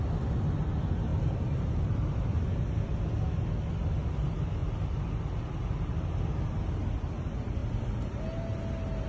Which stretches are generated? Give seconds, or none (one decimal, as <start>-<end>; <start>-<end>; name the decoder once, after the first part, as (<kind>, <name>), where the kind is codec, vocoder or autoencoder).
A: 1.1-1.7 (vocoder, BigVGAN v2)